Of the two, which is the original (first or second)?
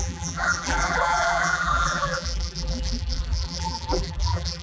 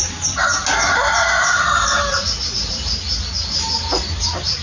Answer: second